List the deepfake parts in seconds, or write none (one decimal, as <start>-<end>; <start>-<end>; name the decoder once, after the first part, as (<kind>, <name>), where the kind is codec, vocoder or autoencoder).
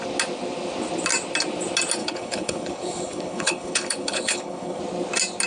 2.0-4.8 (codec, HILCodec)